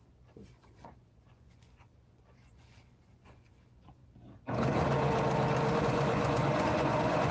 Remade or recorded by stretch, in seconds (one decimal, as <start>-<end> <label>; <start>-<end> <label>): 0.0-4.0 remade; 4.0-5.8 recorded; 5.8-7.3 remade